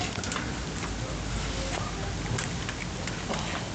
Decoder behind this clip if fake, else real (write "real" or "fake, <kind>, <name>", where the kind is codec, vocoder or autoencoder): real